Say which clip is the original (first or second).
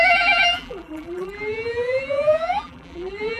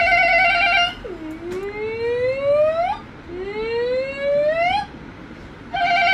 second